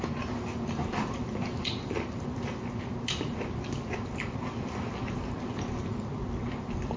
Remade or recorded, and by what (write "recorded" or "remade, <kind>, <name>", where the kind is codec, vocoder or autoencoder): recorded